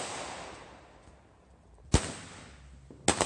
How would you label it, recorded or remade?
recorded